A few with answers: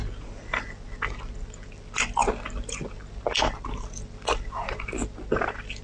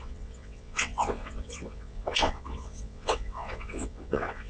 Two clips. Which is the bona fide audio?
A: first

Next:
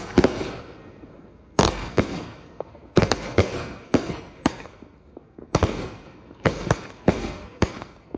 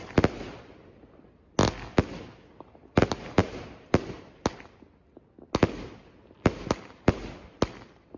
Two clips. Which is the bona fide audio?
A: second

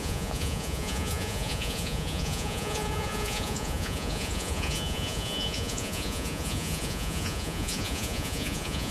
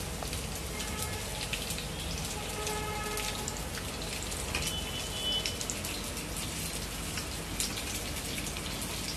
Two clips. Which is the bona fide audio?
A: second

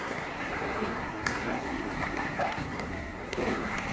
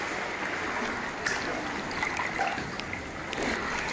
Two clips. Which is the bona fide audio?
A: second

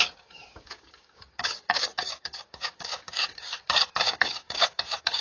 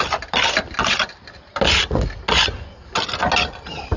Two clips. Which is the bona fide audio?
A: second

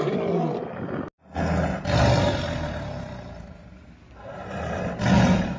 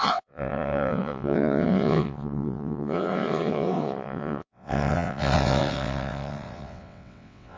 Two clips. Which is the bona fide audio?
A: first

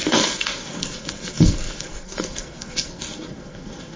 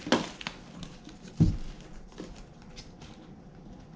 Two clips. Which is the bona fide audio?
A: second